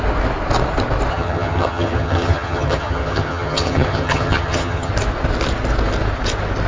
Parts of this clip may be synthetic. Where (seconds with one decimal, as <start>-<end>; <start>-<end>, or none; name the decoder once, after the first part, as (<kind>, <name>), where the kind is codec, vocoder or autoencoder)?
1.1-4.9 (vocoder, HiFi-GAN)